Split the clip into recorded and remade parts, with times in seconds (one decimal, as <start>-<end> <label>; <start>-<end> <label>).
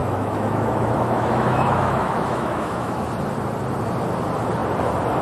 0.0-3.1 remade; 3.1-5.2 recorded